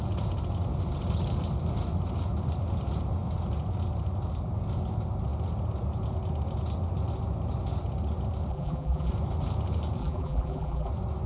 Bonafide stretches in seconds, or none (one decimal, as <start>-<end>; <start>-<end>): 0.0-8.5; 9.1-10.0; 10.9-11.3